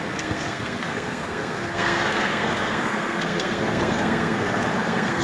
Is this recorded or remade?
remade